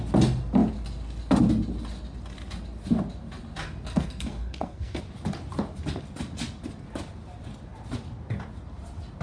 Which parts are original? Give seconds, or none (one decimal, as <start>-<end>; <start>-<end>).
0.0-3.9; 5.0-9.2